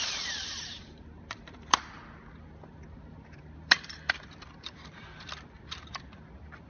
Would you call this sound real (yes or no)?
no